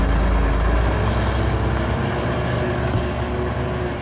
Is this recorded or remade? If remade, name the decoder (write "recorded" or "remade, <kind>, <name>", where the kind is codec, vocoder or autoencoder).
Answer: recorded